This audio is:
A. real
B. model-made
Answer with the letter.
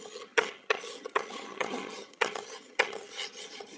B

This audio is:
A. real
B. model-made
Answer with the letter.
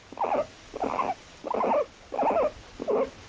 A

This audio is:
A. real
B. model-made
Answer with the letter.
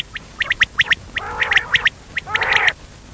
A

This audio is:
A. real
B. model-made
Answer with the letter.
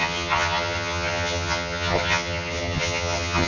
B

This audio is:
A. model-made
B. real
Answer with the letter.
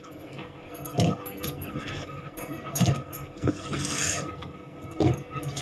A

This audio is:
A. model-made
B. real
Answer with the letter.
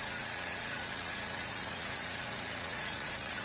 A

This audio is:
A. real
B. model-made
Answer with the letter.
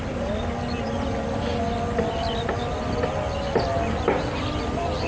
A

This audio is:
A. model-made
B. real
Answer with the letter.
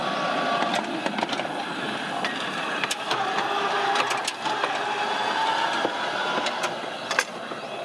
B